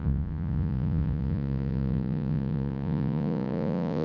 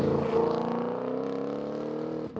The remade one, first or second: first